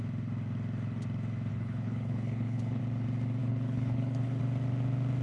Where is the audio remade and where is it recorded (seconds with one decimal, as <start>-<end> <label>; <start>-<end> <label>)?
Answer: 0.0-1.5 recorded; 1.5-2.8 remade; 2.8-3.4 recorded; 3.4-4.4 remade; 4.4-5.2 recorded